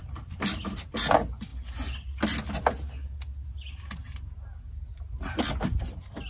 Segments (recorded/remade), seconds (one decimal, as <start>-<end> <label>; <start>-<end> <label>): 0.0-6.3 recorded